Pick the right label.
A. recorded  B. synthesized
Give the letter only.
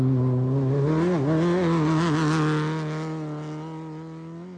A